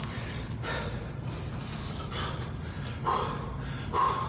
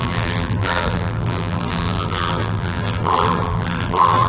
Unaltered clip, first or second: first